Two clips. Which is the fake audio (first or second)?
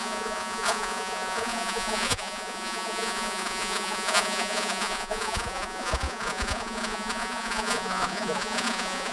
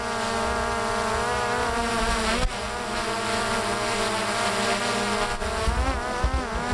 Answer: first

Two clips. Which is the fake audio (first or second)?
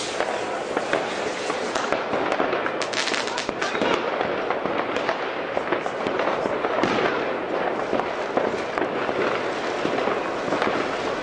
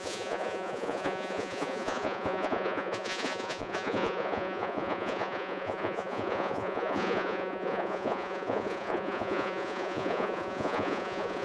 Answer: second